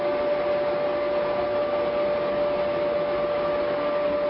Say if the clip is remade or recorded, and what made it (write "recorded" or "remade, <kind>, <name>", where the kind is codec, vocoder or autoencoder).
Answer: recorded